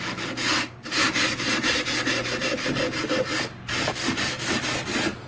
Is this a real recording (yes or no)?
yes